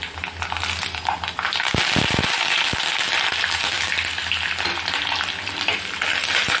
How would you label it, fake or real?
real